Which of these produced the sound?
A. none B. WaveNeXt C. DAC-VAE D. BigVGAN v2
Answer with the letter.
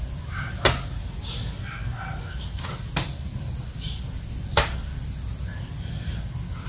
A